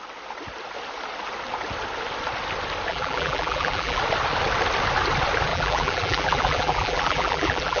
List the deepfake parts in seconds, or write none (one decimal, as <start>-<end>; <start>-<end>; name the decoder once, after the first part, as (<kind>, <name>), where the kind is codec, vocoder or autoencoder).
2.9-4.0 (vocoder, BigVGAN v2); 5.5-7.8